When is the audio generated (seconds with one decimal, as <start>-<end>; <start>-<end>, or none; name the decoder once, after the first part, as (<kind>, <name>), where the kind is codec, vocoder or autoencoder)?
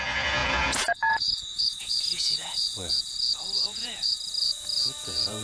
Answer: 0.0-5.4 (vocoder, Vocos)